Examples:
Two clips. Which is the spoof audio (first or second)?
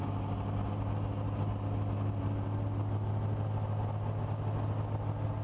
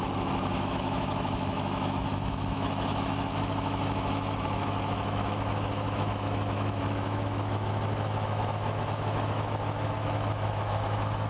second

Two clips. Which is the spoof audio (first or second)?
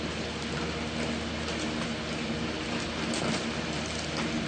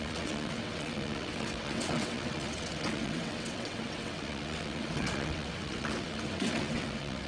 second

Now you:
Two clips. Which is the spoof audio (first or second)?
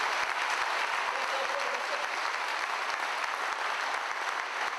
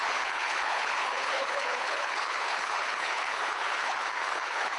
second